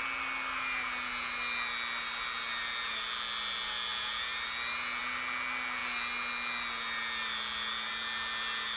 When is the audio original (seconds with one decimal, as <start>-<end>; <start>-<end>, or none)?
0.0-8.8